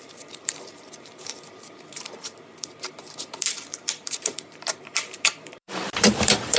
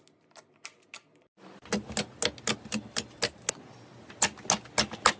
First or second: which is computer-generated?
first